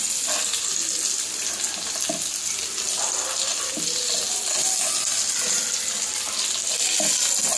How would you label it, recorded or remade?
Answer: recorded